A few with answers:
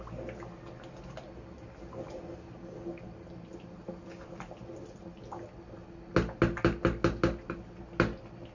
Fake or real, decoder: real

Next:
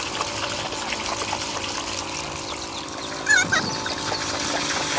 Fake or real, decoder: real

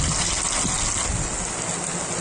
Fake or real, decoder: real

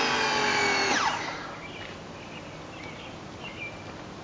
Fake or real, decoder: real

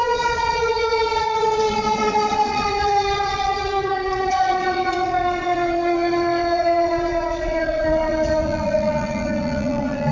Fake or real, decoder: fake, vocoder, Vocos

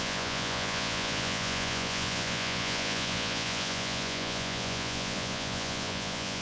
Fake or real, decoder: fake, vocoder, Vocos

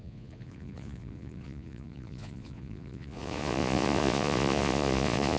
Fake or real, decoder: fake, vocoder, Vocos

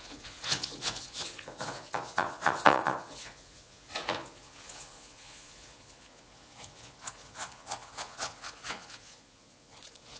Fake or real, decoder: fake, vocoder, Vocos